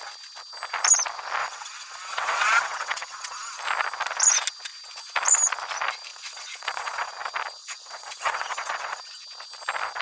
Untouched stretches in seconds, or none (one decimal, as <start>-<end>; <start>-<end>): 0.0-1.4; 3.6-6.1; 7.1-7.6; 9.0-10.0